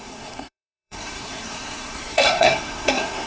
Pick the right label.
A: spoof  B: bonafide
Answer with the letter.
A